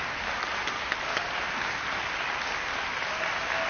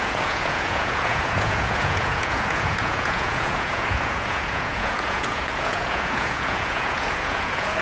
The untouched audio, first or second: first